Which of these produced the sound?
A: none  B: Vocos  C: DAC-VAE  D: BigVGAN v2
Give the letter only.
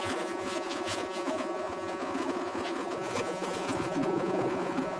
B